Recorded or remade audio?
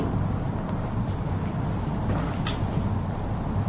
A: recorded